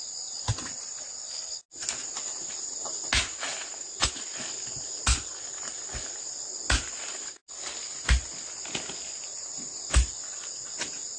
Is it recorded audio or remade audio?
recorded